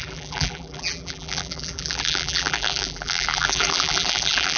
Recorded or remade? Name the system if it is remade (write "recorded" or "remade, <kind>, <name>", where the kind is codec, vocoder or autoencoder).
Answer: remade, vocoder, BigVGAN v2